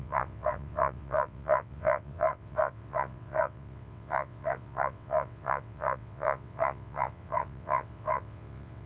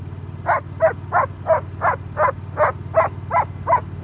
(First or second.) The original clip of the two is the second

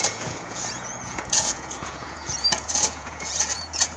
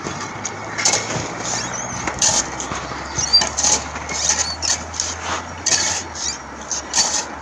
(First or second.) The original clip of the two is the second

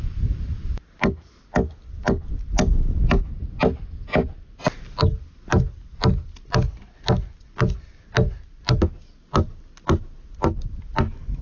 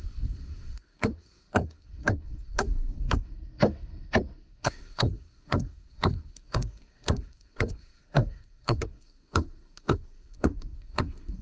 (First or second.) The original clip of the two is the first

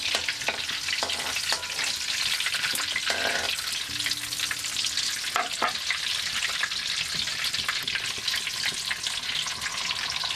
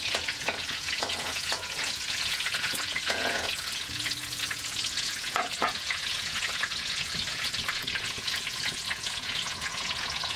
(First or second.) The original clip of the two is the first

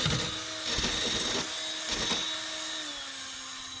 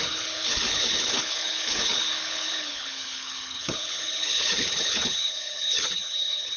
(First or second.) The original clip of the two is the first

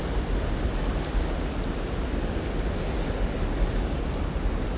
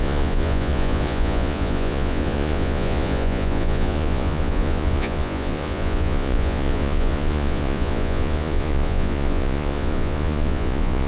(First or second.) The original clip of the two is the first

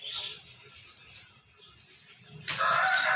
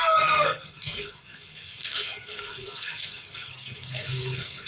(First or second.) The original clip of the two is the first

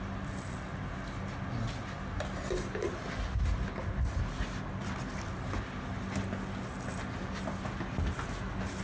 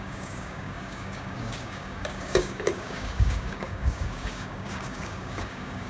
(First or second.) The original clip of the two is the first